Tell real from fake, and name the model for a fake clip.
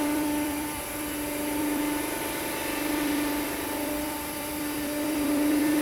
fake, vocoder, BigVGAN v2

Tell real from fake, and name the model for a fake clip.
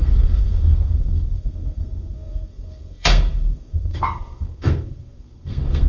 fake, codec, SNAC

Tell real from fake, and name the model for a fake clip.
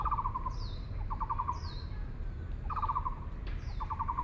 real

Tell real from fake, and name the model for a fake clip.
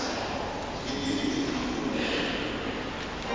real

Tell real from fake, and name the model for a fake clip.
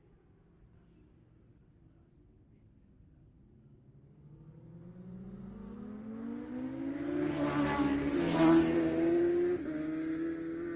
real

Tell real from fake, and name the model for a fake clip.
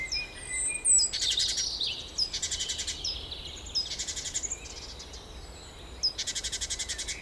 real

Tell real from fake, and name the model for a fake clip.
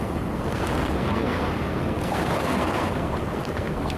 fake, codec, SNAC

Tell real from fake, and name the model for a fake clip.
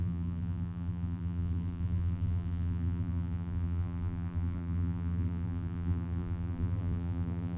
fake, vocoder, BigVGAN v2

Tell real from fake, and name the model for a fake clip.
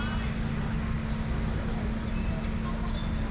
real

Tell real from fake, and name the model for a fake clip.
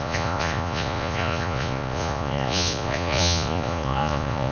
fake, vocoder, Vocos